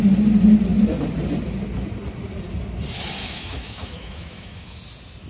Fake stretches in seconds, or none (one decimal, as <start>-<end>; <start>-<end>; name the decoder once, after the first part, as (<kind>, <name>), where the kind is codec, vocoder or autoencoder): 3.2-4.8 (autoencoder, DAC-VAE)